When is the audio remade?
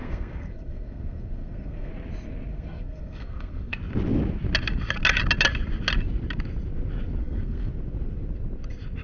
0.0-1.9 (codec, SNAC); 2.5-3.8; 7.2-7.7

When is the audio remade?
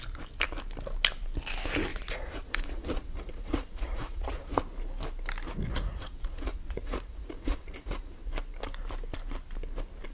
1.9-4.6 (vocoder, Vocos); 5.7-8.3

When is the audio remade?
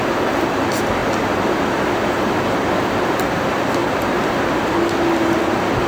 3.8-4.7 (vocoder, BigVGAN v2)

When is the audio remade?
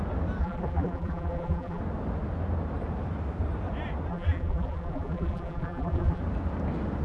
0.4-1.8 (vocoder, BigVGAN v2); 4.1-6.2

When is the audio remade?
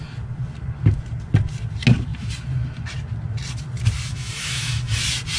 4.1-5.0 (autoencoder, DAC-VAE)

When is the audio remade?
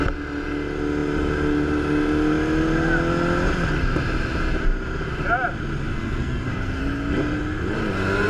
5.9-6.8 (codec, SNAC)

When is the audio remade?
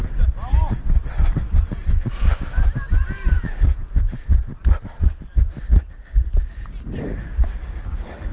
3.3-4.1 (vocoder, Vocos)